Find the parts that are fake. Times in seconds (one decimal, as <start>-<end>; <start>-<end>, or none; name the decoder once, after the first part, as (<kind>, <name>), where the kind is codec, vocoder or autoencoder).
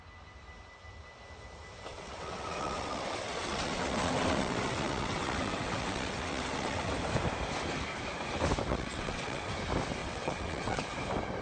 1.9-6.9 (vocoder, WaveNeXt); 8.7-9.5; 10.0-10.8